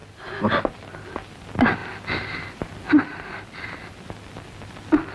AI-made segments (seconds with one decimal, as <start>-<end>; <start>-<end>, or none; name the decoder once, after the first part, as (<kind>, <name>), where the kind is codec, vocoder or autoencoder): none